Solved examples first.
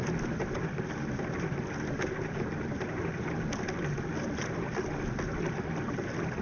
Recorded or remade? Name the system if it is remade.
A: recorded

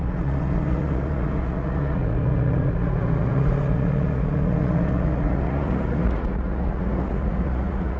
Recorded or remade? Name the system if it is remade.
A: remade, vocoder, Vocos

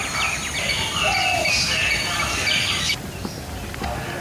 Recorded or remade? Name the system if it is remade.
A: recorded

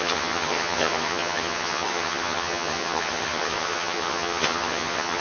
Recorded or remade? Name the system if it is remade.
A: remade, vocoder, HiFi-GAN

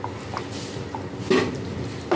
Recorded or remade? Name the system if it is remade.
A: recorded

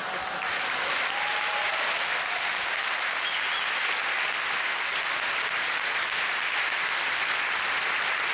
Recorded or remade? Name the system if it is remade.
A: recorded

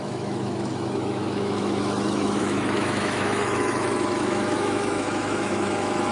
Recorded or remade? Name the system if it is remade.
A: remade, autoencoder, DAC-VAE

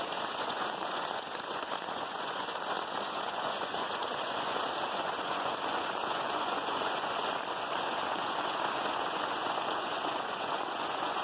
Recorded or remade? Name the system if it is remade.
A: remade, vocoder, Vocos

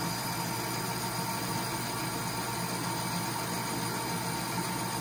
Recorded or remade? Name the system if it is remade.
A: recorded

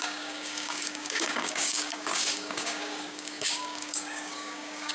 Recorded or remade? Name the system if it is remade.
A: remade, codec, DAC